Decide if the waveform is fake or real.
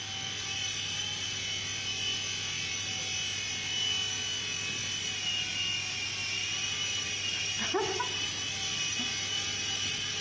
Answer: real